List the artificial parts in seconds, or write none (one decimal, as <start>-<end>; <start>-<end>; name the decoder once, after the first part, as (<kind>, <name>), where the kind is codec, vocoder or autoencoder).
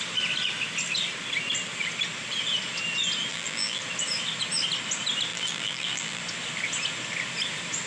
3.3-3.8 (vocoder, BigVGAN v2); 5.3-6.2